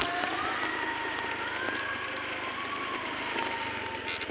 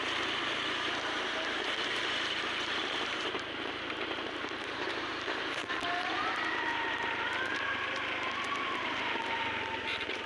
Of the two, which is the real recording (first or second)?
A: first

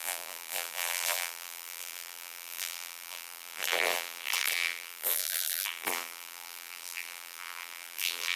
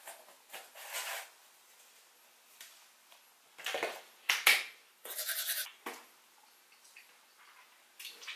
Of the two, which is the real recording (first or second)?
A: second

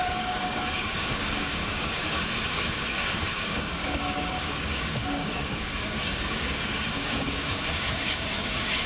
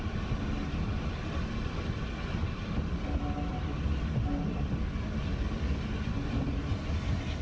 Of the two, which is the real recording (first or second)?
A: second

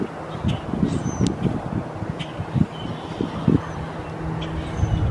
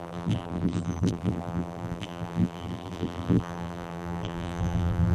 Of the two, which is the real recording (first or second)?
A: first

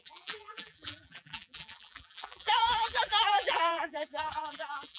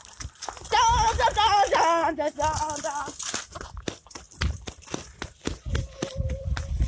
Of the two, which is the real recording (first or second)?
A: second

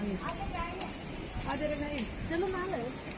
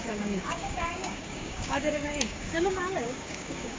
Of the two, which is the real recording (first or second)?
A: first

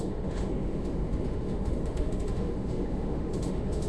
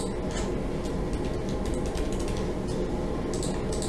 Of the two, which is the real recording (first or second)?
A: second